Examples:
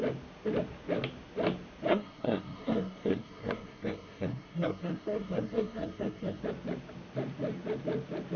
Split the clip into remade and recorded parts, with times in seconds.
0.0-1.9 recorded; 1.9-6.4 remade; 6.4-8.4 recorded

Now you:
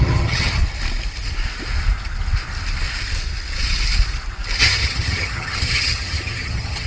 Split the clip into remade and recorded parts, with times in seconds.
0.0-0.6 remade; 0.6-4.6 recorded; 4.6-6.9 remade

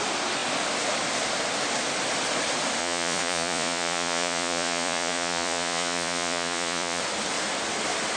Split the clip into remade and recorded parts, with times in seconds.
0.0-2.8 recorded; 2.8-7.0 remade; 7.0-8.2 recorded

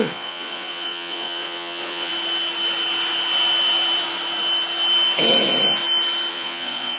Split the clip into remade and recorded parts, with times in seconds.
0.0-2.1 remade; 2.1-6.3 recorded; 6.3-7.0 remade

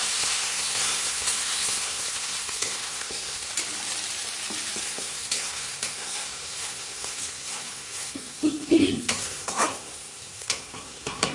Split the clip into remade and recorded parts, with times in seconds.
0.0-3.5 remade; 3.5-4.8 recorded; 4.8-11.3 remade